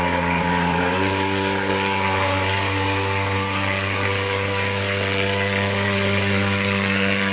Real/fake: fake